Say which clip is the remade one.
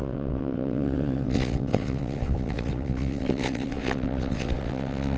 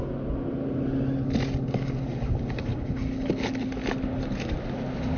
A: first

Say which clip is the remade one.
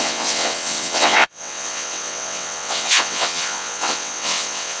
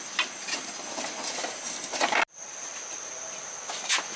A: first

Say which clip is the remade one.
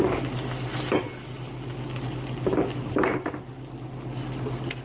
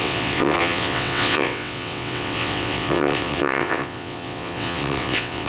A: second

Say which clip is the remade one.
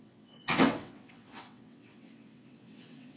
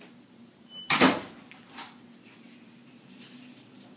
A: first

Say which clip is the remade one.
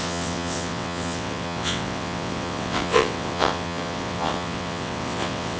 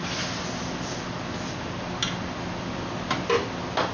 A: first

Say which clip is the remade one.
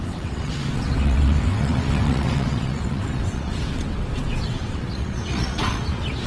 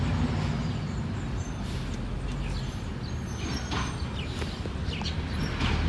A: first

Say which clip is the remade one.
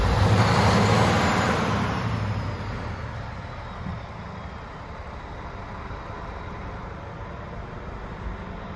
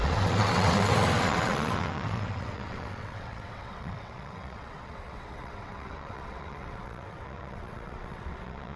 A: second